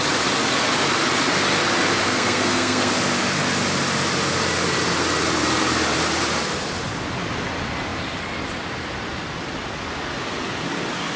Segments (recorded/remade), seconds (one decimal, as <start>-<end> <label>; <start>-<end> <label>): 0.0-2.0 recorded; 2.0-2.9 remade; 2.9-11.2 recorded